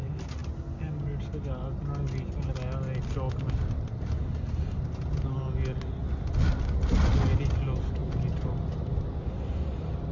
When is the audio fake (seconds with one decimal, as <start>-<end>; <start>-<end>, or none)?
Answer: none